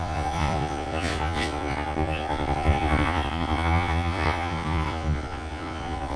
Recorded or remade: remade